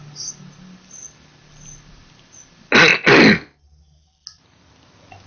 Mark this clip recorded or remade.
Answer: recorded